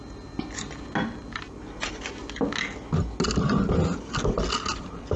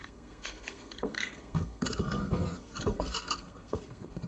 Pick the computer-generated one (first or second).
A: second